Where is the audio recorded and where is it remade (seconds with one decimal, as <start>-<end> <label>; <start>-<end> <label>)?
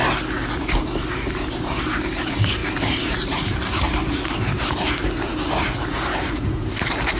0.0-0.7 recorded; 0.7-7.2 remade